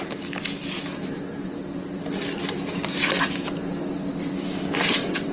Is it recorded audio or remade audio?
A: recorded